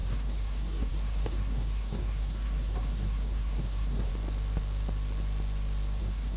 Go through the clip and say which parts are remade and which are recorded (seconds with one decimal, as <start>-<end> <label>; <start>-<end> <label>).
0.0-4.1 remade; 4.1-6.0 recorded; 6.0-6.4 remade